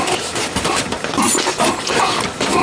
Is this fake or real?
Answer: fake